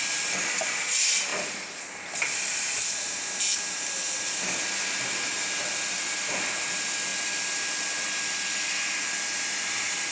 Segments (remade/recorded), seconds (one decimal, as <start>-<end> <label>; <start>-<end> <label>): 0.0-10.1 recorded

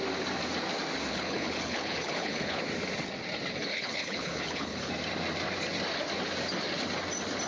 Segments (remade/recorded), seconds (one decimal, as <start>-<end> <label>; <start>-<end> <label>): 0.0-1.1 recorded; 1.1-2.6 remade; 2.6-3.7 recorded; 3.7-4.9 remade; 4.9-7.5 recorded

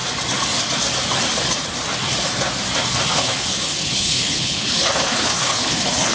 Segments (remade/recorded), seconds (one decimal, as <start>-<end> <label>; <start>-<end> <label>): 0.0-3.1 recorded; 3.1-6.1 remade

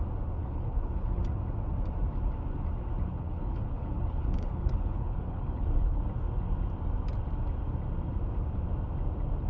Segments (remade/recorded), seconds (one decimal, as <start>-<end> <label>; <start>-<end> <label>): 0.0-0.4 recorded; 0.4-1.2 remade; 1.2-3.1 recorded; 3.1-6.0 remade; 6.0-9.5 recorded